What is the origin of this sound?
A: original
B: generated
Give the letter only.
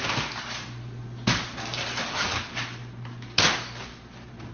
A